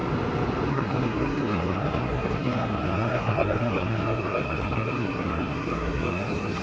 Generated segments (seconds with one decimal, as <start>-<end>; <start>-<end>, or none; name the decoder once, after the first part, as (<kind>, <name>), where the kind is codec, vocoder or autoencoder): 0.7-6.6 (codec, SNAC)